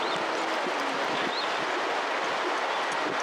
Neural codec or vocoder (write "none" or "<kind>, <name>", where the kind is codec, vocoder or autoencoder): none